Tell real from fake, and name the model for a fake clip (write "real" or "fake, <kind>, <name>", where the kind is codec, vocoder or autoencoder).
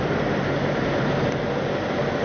real